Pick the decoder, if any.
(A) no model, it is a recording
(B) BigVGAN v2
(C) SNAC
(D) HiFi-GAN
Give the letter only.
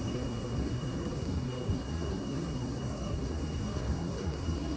C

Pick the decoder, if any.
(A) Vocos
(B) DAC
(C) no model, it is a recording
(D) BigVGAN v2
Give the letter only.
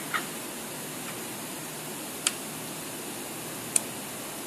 C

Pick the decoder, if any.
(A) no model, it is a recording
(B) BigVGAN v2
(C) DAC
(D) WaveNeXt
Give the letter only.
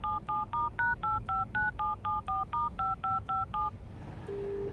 C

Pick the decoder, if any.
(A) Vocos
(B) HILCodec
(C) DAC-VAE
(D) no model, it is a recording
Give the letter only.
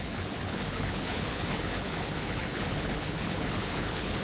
B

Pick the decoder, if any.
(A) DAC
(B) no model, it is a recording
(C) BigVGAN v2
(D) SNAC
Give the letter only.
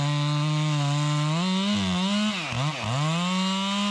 B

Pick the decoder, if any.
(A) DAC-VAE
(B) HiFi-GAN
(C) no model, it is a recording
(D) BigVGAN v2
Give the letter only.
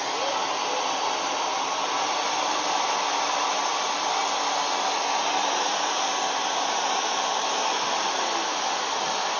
C